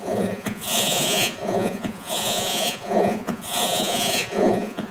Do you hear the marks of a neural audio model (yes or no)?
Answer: yes